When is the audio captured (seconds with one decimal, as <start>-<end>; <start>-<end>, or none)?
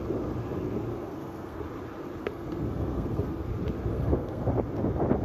0.0-0.9; 1.6-2.2; 3.5-3.9; 4.5-5.2